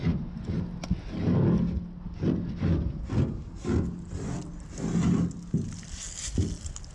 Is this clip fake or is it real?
real